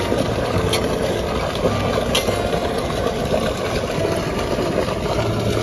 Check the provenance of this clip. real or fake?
real